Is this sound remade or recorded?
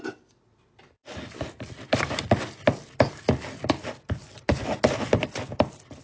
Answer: recorded